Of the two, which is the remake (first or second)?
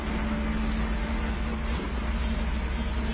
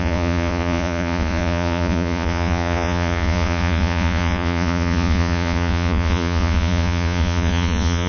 second